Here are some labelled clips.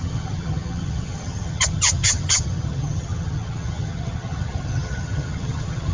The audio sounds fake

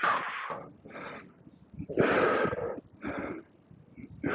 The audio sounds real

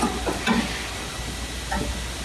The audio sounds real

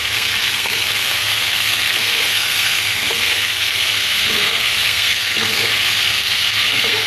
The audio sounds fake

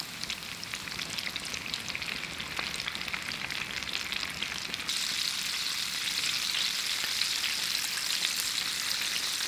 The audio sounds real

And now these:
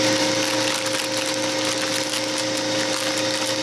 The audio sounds real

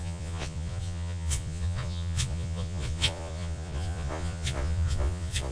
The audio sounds fake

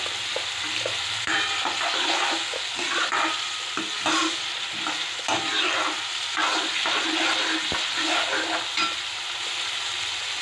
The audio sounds real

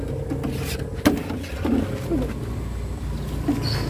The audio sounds real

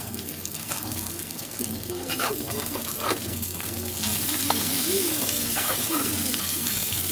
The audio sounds fake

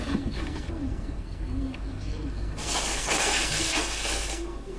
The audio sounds fake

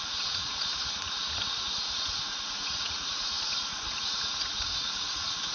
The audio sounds fake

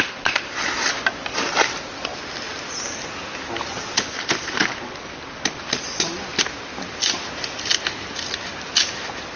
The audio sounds real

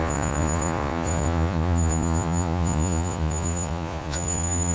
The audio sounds fake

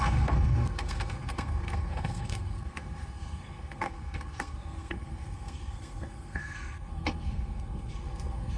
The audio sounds fake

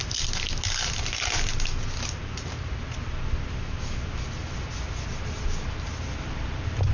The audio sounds real